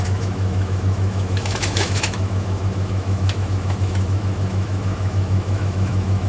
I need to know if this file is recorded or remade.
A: remade